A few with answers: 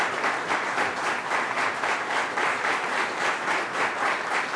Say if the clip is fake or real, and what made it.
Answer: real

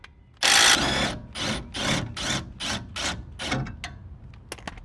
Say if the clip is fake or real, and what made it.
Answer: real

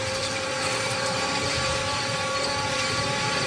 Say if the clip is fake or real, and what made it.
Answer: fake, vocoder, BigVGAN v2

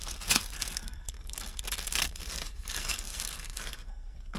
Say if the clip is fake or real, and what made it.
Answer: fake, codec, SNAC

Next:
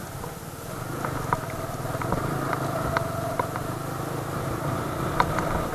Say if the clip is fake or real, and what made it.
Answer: real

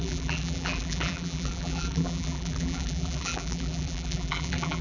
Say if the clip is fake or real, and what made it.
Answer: fake, vocoder, BigVGAN v2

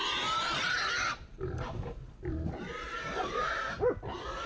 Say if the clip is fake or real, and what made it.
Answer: real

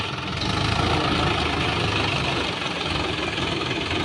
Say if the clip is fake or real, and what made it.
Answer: real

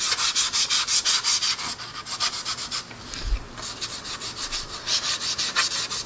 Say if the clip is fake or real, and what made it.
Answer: real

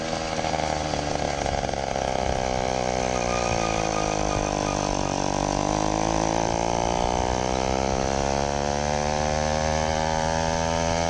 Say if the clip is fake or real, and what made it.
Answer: real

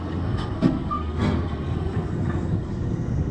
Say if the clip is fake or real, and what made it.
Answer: fake, codec, SNAC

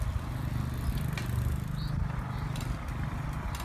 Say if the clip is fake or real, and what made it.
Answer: real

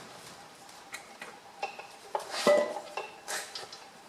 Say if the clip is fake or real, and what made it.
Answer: fake, vocoder, BigVGAN v2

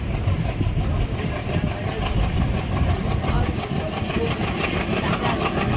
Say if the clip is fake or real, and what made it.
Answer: real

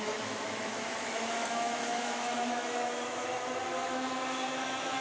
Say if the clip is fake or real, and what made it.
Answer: fake, autoencoder, DAC-VAE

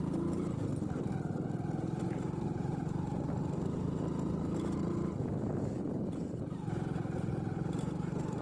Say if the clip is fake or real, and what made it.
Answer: real